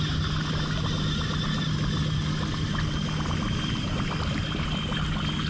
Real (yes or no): yes